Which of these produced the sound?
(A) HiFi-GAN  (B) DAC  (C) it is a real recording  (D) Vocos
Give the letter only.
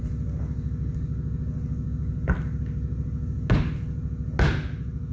C